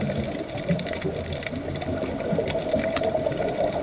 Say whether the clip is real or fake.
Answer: real